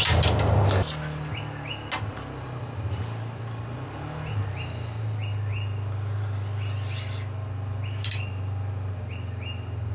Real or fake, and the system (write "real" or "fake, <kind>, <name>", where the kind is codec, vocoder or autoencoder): real